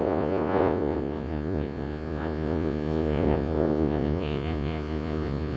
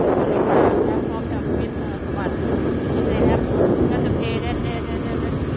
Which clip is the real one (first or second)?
second